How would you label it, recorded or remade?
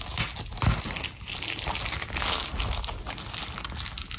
recorded